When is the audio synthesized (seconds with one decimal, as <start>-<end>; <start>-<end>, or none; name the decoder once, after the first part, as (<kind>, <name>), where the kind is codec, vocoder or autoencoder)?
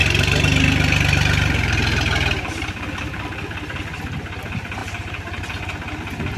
4.8-5.4 (vocoder, BigVGAN v2)